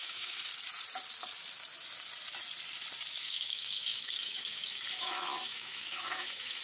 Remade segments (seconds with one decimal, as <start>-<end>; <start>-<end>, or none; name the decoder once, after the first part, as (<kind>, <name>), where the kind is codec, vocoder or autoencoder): 0.0-0.5 (autoencoder, DAC-VAE); 3.1-6.6